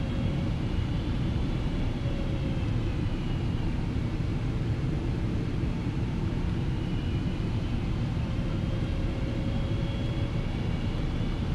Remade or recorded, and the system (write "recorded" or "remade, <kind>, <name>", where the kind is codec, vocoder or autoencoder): remade, vocoder, BigVGAN v2